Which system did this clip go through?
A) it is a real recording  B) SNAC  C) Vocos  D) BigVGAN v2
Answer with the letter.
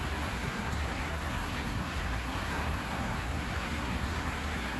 B